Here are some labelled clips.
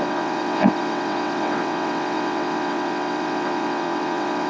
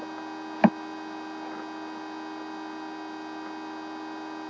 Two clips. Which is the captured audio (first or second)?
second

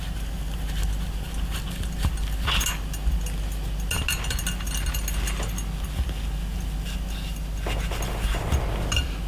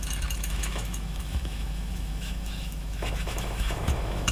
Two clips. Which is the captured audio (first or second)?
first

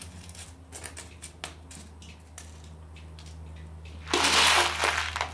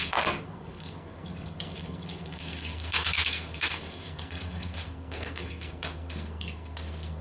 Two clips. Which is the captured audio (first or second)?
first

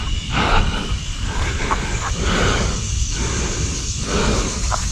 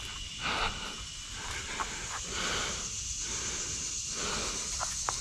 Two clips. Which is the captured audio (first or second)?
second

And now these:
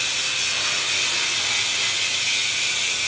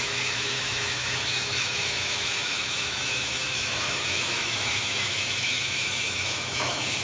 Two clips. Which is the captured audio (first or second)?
first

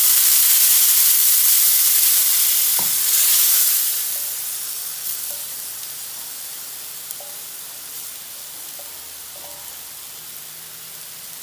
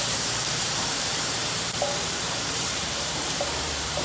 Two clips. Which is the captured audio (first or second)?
first